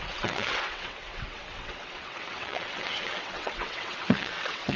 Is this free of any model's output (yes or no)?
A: no